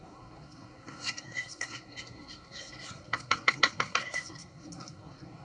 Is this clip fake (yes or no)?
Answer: yes